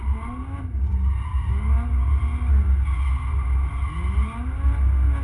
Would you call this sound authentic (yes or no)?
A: yes